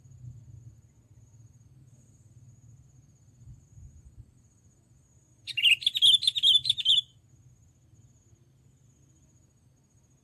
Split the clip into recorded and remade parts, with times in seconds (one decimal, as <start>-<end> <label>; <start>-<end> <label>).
0.0-10.2 recorded